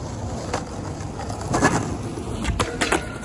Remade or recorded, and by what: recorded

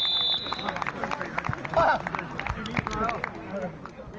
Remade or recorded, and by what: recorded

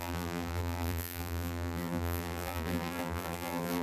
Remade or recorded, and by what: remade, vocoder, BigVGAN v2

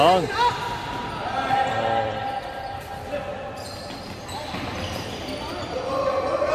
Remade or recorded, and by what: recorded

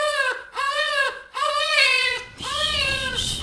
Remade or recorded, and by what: remade, vocoder, Vocos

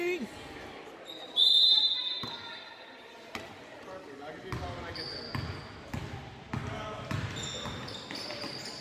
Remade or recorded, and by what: recorded